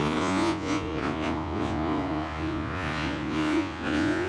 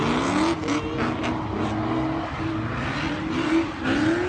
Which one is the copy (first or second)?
first